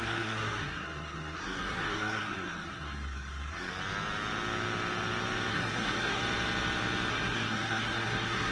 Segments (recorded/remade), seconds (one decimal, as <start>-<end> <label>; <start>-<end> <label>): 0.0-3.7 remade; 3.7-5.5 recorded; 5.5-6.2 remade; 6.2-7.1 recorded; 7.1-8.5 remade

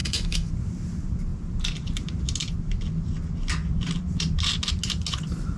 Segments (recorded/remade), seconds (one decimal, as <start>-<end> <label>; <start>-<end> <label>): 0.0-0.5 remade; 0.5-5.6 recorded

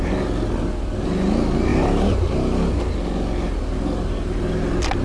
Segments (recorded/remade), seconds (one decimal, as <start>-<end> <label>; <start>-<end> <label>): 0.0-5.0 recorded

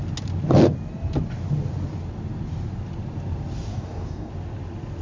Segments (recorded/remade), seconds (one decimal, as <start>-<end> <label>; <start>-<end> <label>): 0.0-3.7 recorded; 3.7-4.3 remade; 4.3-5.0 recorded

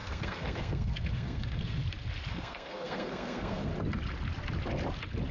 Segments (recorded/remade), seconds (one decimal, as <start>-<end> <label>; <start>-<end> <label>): 0.0-1.8 remade; 1.8-2.3 recorded; 2.3-3.7 remade; 3.7-5.3 recorded

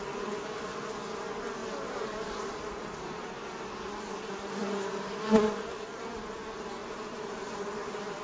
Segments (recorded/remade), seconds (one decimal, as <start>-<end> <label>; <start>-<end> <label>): 0.0-1.6 recorded; 1.6-3.9 remade; 3.9-4.6 recorded; 4.6-5.9 remade; 5.9-6.8 recorded; 6.8-7.6 remade; 7.6-8.2 recorded

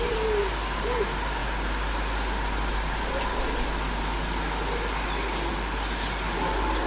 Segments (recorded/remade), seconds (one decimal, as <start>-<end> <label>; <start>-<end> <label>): 0.0-1.4 remade; 1.4-5.5 recorded; 5.5-6.9 remade